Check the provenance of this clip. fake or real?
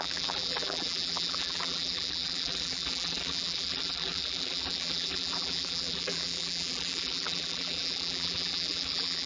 fake